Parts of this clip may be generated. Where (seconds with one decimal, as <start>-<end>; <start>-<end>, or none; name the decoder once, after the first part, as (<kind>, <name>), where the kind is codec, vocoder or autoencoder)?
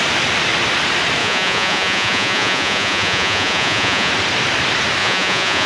1.2-4.1 (vocoder, Vocos); 5.0-5.7